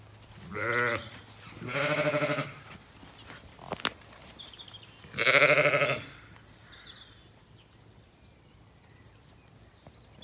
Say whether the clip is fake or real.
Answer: real